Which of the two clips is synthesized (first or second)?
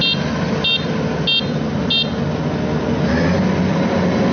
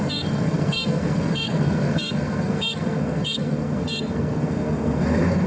second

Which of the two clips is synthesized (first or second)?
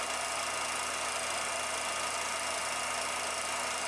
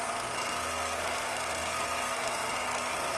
second